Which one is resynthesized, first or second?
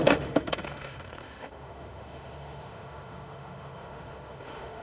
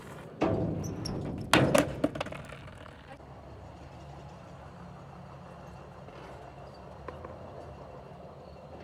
first